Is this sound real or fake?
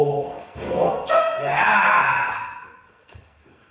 fake